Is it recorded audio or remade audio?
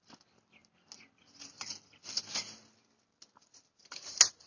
recorded